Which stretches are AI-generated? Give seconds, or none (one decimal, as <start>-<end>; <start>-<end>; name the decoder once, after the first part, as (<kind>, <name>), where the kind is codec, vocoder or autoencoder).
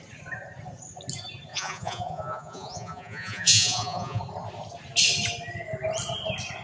1.5-4.2 (vocoder, Vocos)